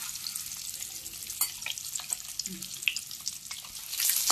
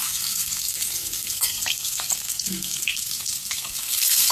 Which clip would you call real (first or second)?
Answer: first